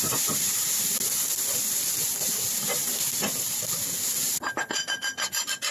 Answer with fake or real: real